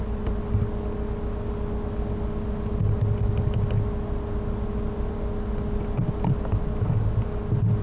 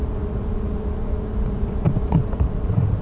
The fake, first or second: second